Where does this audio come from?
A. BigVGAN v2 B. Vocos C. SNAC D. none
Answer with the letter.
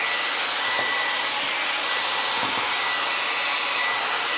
D